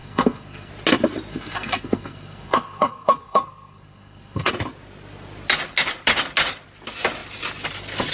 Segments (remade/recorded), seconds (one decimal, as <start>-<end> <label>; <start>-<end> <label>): 0.0-0.7 remade; 0.7-1.3 recorded; 1.3-4.5 remade; 4.5-8.1 recorded

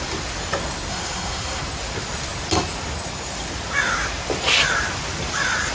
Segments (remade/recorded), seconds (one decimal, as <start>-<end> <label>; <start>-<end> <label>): 0.0-0.9 recorded; 0.9-1.6 remade; 1.6-5.7 recorded

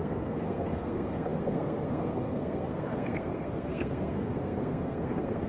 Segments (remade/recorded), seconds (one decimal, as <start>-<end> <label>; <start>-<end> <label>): 0.0-5.5 remade

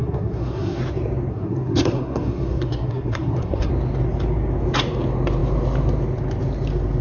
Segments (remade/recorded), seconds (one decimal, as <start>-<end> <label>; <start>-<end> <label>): 0.0-0.8 remade; 0.8-1.3 recorded; 1.3-3.7 remade; 3.7-7.0 recorded

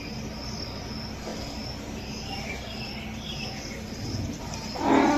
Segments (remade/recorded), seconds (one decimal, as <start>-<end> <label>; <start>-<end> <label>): 0.0-5.2 recorded

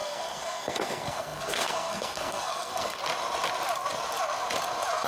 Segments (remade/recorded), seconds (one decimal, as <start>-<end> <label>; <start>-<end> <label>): 0.0-3.0 remade; 3.0-5.1 recorded

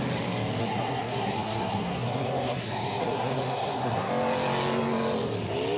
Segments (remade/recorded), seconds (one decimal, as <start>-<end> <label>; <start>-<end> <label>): 0.0-0.6 recorded; 0.6-4.1 remade; 4.1-5.8 recorded

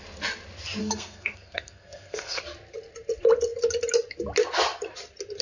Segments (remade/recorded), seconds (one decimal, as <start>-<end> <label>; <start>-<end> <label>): 0.0-0.8 recorded; 0.8-2.4 remade; 2.4-5.4 recorded